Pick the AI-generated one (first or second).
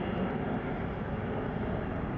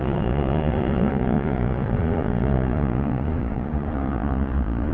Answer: second